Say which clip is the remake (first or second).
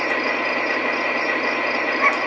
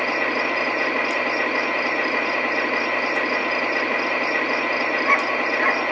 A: second